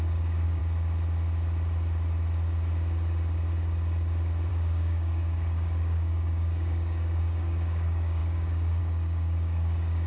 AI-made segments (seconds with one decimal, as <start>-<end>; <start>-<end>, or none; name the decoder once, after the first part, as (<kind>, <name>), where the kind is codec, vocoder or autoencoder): 0.0-0.6 (codec, DAC); 4.5-10.1